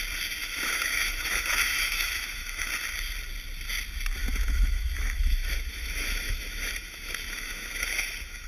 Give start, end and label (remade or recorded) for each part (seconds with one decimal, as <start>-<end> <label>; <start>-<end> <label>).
0.0-0.4 recorded; 0.4-2.7 remade; 2.7-4.2 recorded; 4.2-8.5 remade